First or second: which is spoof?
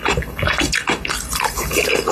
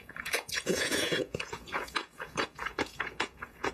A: second